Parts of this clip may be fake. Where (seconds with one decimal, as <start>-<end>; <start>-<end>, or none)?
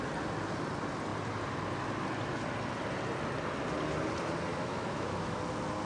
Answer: 4.5-5.4